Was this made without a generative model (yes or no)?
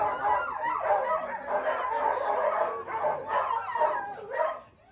yes